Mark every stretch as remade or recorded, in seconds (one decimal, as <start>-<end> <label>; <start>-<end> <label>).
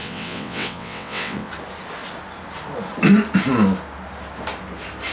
0.0-1.5 remade; 1.5-5.1 recorded